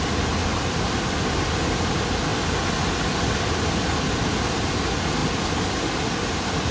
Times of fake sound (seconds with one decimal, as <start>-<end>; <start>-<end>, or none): none